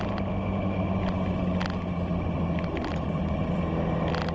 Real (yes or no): yes